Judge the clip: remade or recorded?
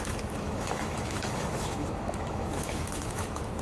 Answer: remade